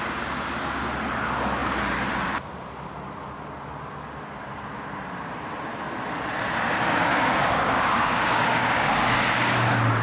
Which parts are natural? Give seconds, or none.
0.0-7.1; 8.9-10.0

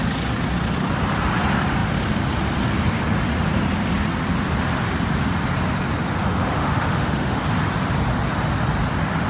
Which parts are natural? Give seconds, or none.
0.0-6.2; 7.4-9.3

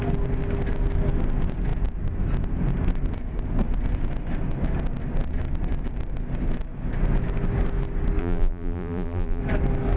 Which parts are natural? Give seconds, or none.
0.0-8.2; 9.4-10.0

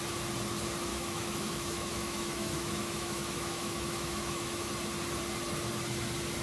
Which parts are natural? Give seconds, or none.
0.0-0.9; 4.7-6.4

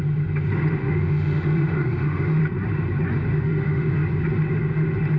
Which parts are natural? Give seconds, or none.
0.0-0.8; 2.4-3.3; 3.9-5.2

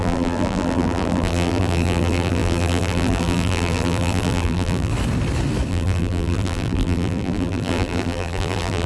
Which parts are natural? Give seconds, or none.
4.9-5.7

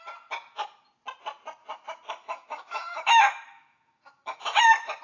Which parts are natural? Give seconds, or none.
0.0-1.6; 4.6-5.0